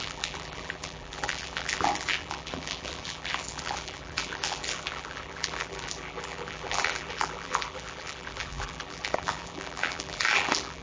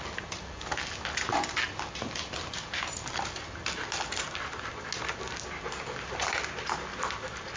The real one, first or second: second